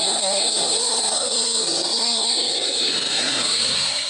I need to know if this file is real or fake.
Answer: fake